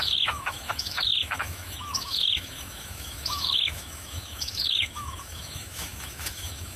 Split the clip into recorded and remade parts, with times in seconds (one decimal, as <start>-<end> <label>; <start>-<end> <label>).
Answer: 0.0-6.8 remade